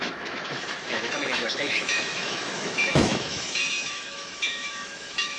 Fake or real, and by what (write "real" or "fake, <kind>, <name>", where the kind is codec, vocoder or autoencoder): fake, autoencoder, DAC-VAE